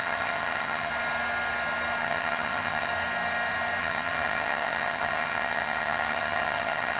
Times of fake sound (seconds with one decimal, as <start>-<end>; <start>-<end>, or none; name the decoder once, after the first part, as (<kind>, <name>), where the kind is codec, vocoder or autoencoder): 0.0-0.9 (vocoder, HiFi-GAN); 2.0-2.9; 3.8-7.0

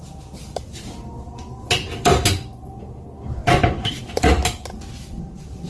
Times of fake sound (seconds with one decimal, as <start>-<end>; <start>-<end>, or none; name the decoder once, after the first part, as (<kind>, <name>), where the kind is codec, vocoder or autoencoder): 0.0-2.2 (vocoder, BigVGAN v2); 2.8-4.4; 5.2-5.7

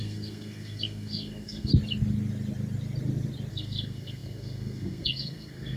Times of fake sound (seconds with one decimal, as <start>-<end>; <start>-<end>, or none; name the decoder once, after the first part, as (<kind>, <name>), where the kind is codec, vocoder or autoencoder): 0.0-1.7 (codec, SNAC); 3.5-5.8

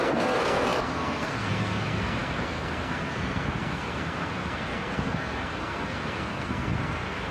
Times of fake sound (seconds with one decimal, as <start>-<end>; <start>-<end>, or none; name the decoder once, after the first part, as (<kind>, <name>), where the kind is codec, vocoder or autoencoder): 0.0-7.3 (codec, SNAC)

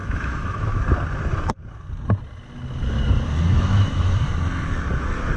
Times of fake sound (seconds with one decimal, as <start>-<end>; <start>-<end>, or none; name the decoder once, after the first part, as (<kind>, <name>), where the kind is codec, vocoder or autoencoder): 0.0-0.8 (autoencoder, DAC-VAE); 3.5-4.2

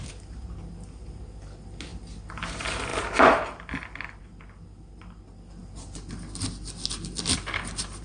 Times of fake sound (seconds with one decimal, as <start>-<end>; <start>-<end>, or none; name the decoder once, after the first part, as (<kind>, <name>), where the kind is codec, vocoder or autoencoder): none

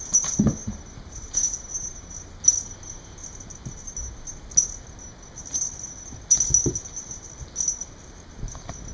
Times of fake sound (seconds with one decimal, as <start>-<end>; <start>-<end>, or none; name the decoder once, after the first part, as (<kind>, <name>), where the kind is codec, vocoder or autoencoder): 0.6-2.3 (vocoder, BigVGAN v2)

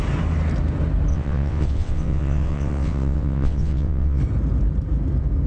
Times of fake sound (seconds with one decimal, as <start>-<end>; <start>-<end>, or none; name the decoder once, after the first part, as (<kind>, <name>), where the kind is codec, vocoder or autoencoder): 1.1-4.2 (vocoder, WaveNeXt)